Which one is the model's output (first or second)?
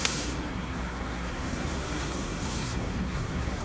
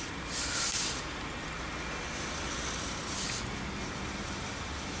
first